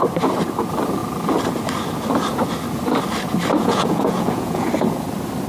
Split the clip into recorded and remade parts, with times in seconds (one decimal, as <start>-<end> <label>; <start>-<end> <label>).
0.0-3.6 recorded; 3.6-4.7 remade; 4.7-5.5 recorded

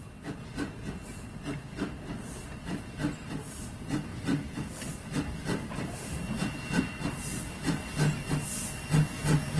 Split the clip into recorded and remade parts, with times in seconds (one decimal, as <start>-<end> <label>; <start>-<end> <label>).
0.0-9.6 recorded

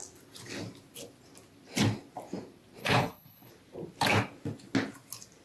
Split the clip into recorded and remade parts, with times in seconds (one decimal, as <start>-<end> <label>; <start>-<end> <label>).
0.0-2.8 recorded; 2.8-3.5 remade; 3.5-5.4 recorded

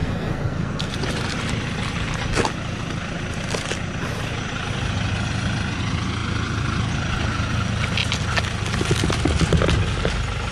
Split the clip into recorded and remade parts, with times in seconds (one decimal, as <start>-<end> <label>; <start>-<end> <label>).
0.0-0.9 remade; 0.9-10.5 recorded

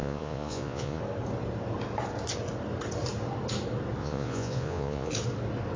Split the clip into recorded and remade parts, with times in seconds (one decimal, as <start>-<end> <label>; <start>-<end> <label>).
0.0-1.0 remade; 1.0-4.0 recorded; 4.0-5.1 remade; 5.1-5.8 recorded

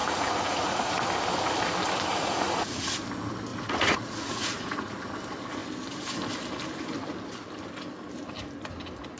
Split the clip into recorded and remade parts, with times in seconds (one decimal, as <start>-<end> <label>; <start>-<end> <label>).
0.0-0.9 remade; 0.9-2.1 recorded; 2.1-2.9 remade; 2.9-3.5 recorded; 3.5-5.0 remade; 5.0-9.2 recorded

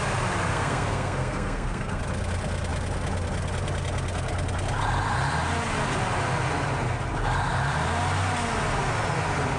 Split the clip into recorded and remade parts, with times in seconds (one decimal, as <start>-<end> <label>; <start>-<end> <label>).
0.0-0.5 recorded; 0.5-2.0 remade; 2.0-9.6 recorded